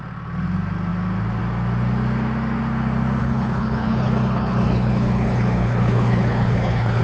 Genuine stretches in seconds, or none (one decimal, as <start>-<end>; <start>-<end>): 0.0-3.2